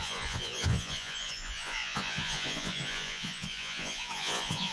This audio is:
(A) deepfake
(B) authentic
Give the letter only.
A